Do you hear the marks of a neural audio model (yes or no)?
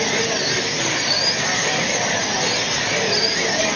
no